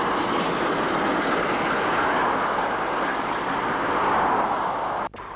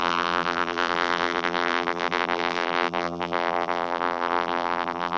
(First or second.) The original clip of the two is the first